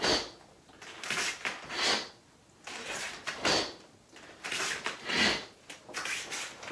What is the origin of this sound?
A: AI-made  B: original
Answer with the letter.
B